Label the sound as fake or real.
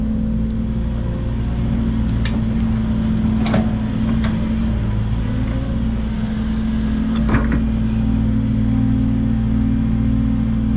real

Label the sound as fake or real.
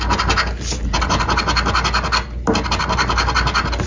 real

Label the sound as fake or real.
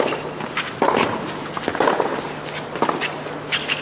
real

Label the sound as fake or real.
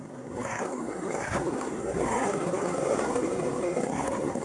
fake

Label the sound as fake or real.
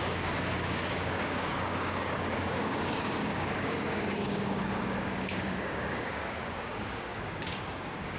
fake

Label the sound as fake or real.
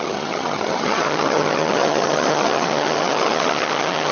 fake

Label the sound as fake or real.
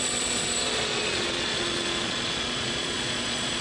fake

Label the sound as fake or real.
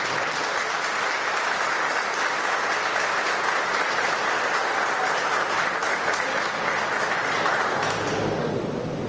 real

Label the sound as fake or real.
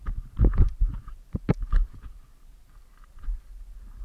fake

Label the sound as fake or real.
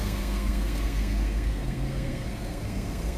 fake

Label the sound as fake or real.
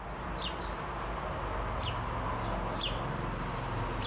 real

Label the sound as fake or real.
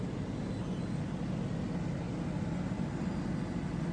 real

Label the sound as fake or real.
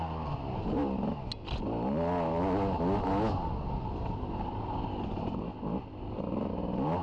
real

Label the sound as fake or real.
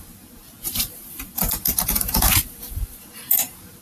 fake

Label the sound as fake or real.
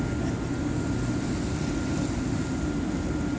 real